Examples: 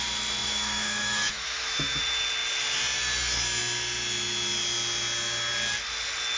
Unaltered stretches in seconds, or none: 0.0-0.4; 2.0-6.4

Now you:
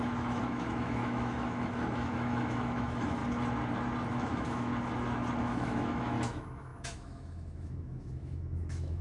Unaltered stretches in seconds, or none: 3.2-4.1; 4.7-5.4

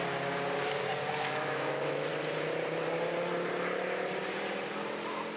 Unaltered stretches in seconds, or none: 0.0-1.1; 2.1-5.4

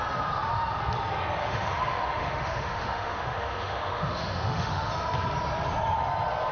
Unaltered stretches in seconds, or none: 0.0-1.4; 4.9-6.5

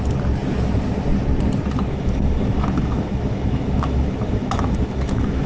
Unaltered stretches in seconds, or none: 0.0-1.9

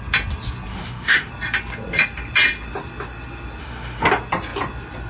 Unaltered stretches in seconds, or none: 0.0-0.7; 1.3-3.6; 4.1-5.1

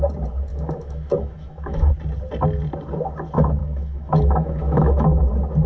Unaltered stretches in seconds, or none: 0.0-0.5; 1.9-3.6; 5.2-5.7

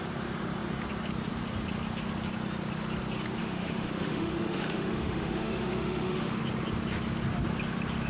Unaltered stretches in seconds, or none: 0.0-3.4; 6.4-8.1